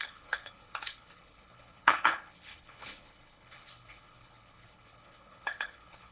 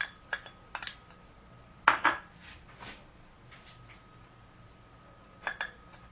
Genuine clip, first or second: second